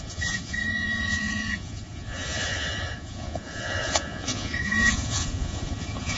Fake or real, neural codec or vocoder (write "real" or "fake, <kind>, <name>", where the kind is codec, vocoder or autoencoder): fake, vocoder, Vocos